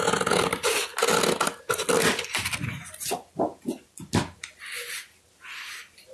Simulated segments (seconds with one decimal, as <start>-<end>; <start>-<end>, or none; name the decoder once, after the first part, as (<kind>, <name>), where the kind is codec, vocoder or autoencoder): none

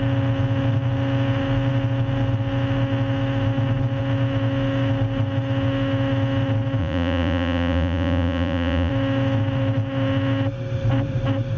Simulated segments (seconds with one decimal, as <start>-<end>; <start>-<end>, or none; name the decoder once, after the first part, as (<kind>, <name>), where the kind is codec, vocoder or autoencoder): 6.8-8.9 (vocoder, Vocos)

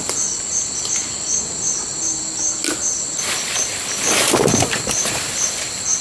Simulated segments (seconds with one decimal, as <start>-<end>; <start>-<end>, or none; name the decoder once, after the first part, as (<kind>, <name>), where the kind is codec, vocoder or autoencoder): none

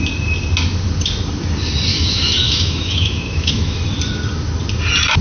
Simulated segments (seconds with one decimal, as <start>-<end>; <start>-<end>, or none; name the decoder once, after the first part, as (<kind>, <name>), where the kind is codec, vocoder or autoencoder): 1.9-3.8 (autoencoder, DAC-VAE)

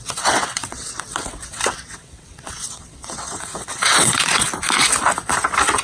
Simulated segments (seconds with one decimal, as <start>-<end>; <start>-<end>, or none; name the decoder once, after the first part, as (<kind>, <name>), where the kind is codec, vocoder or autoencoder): 0.0-4.5 (vocoder, WaveNeXt)

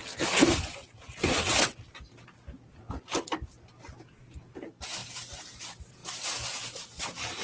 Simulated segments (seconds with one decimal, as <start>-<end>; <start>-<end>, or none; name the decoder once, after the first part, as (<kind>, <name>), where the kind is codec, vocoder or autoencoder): none

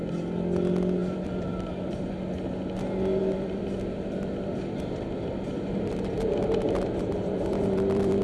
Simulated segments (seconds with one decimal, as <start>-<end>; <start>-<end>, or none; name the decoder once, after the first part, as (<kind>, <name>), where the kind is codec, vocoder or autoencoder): 1.0-2.1 (vocoder, BigVGAN v2); 3.2-8.2